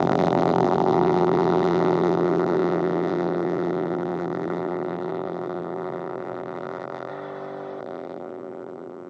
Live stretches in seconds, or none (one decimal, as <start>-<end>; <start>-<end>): 7.1-7.8